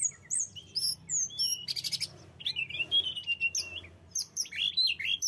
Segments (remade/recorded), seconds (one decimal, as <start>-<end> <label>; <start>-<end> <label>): 0.0-0.9 remade; 0.9-4.1 recorded; 4.1-5.3 remade